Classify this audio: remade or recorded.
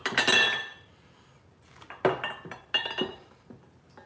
recorded